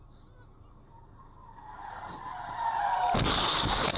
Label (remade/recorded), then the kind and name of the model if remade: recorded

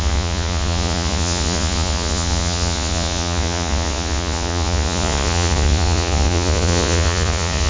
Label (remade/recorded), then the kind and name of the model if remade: remade, vocoder, Vocos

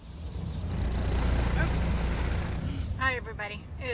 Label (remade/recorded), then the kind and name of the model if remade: recorded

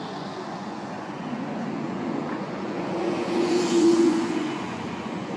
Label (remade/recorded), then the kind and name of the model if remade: remade, vocoder, Vocos